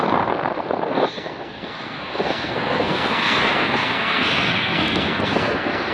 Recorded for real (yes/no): no